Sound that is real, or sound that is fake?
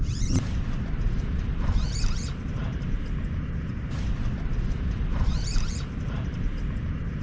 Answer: fake